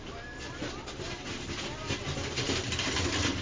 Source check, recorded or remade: recorded